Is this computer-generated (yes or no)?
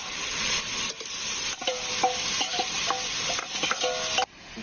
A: no